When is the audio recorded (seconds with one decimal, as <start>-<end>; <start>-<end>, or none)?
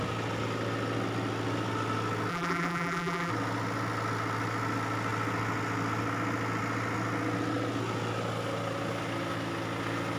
0.0-2.3; 3.3-10.2